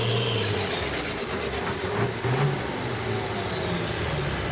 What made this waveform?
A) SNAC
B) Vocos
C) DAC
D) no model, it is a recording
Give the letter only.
D